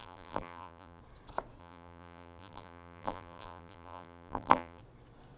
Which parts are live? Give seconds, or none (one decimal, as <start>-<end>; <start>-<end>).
1.0-1.6; 4.8-5.4